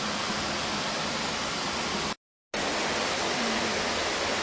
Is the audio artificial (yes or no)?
no